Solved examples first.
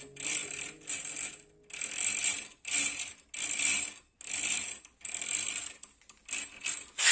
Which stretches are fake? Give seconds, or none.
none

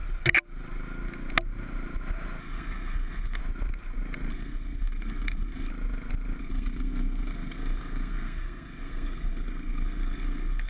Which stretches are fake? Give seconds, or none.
2.4-3.4 (codec, SNAC); 4.3-5.7; 6.4-10.7

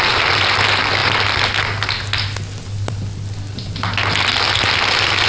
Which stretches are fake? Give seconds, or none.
none